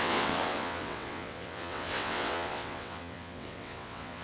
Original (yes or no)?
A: no